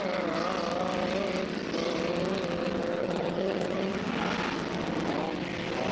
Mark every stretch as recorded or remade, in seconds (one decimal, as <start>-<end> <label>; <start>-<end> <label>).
0.0-3.0 recorded; 3.0-3.9 remade; 3.9-5.9 recorded

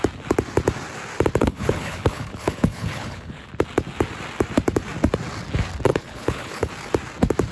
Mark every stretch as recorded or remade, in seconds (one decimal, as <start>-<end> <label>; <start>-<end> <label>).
0.0-1.4 recorded; 1.4-3.5 remade; 3.5-5.9 recorded; 5.9-6.7 remade; 6.7-7.5 recorded

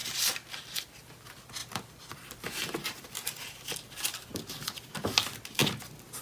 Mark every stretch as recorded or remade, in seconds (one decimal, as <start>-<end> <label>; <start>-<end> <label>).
0.0-1.6 recorded; 1.6-4.9 remade; 4.9-6.2 recorded

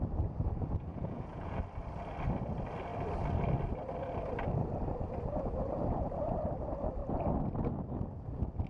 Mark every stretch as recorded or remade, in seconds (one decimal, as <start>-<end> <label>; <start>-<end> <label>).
0.0-0.9 recorded; 0.9-1.6 remade; 1.6-8.7 recorded

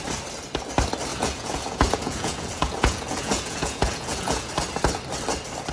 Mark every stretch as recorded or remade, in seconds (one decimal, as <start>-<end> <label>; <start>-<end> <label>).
0.0-1.1 recorded; 1.1-4.5 remade; 4.5-5.7 recorded

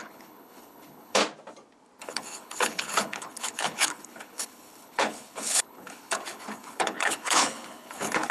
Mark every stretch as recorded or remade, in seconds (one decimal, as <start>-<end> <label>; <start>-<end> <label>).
0.0-1.2 remade; 1.2-2.0 recorded; 2.0-8.3 remade

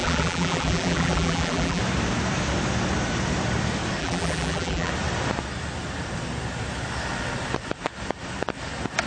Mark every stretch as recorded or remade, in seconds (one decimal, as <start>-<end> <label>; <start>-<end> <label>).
0.0-1.8 remade; 1.8-4.0 recorded; 4.0-4.9 remade; 4.9-9.1 recorded